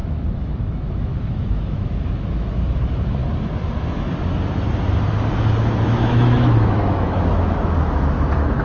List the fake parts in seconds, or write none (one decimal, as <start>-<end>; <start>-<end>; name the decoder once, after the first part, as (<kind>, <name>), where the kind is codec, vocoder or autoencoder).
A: 0.0-3.2 (autoencoder, DAC-VAE); 5.8-8.6